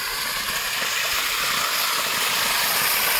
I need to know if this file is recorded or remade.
recorded